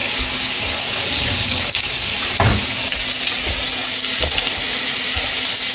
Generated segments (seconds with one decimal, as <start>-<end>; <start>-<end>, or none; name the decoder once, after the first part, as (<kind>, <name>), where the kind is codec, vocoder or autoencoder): 0.0-2.1 (codec, DAC)